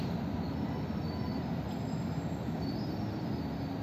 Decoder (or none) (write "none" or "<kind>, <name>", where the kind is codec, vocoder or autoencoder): none